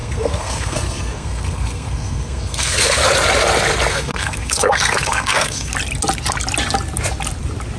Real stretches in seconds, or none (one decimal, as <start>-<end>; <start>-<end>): 3.0-3.9; 5.7-7.8